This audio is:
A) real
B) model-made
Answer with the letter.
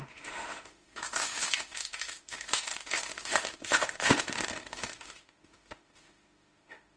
B